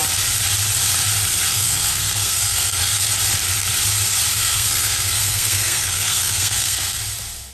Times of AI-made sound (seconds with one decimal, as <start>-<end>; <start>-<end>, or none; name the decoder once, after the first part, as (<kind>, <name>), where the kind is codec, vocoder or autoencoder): 1.5-3.1 (codec, SNAC); 4.3-7.0